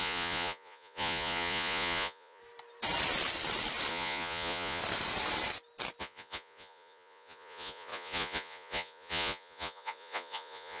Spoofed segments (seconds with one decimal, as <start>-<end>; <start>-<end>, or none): 0.0-2.4; 3.9-4.8; 6.0-10.8

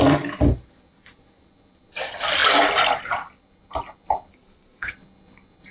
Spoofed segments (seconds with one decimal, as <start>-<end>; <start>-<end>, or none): 4.3-4.9